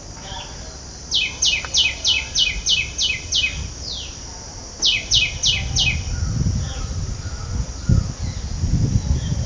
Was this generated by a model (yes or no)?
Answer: no